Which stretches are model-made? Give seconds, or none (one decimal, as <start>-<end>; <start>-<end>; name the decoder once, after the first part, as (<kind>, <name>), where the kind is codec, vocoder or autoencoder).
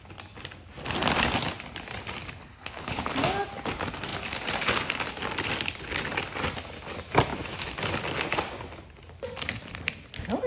2.5-3.1 (codec, HILCodec)